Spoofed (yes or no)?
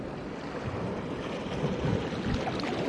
no